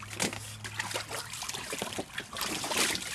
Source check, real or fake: real